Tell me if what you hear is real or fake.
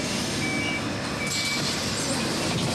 real